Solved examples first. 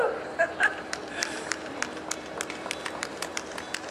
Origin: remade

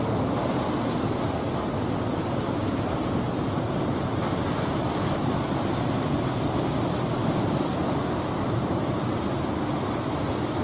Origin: recorded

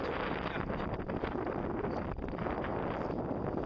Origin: recorded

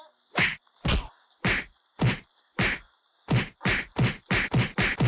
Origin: recorded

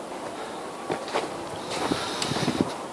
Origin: recorded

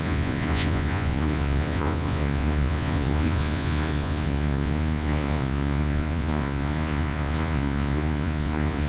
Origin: remade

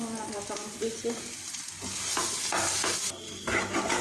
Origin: recorded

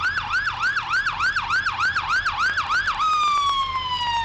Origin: recorded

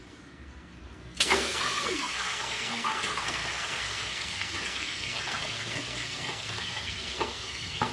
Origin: remade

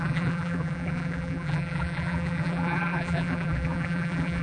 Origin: remade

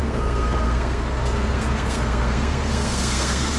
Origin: remade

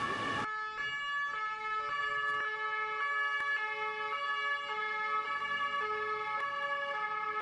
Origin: recorded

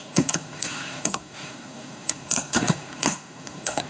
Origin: remade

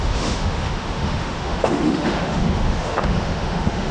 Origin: remade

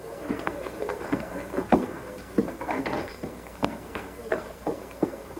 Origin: remade